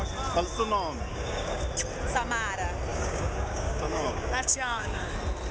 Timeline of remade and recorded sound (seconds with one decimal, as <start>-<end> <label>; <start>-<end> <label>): 0.0-1.1 recorded; 1.1-1.6 remade; 1.6-2.9 recorded; 2.9-5.1 remade; 5.1-5.5 recorded